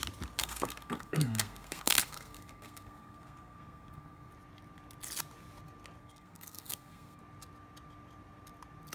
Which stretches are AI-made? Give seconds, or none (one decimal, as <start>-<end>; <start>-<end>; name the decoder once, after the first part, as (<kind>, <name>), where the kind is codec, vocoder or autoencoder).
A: 0.4-4.3 (codec, SNAC); 6.0-7.2